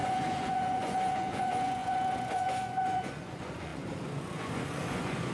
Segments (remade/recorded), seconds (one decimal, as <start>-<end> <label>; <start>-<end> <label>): 0.0-5.3 remade